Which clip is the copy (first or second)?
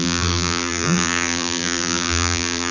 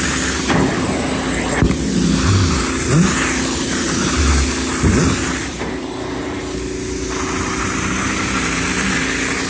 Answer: first